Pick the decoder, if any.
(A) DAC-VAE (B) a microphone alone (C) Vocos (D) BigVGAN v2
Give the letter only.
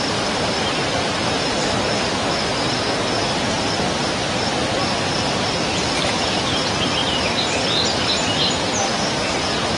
B